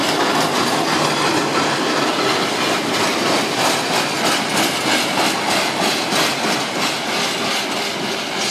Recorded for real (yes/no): yes